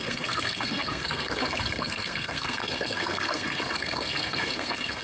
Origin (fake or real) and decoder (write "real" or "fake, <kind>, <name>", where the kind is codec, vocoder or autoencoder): fake, codec, SNAC